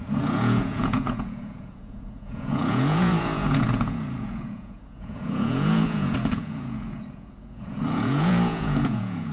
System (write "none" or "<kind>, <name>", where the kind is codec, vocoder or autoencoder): vocoder, Vocos